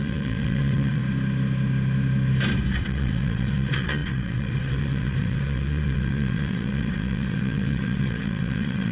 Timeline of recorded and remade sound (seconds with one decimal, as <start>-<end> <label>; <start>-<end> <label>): 0.0-1.0 remade; 1.0-2.8 recorded; 2.8-8.9 remade